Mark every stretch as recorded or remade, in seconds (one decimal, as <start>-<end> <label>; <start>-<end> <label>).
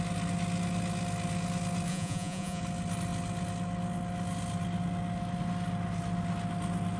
0.0-1.9 recorded; 1.9-2.6 remade; 2.6-7.0 recorded